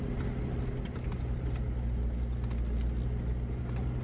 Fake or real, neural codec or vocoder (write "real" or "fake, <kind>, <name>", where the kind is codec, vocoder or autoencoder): real